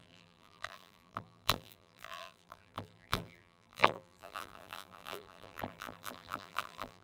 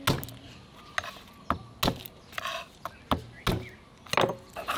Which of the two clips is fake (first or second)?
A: first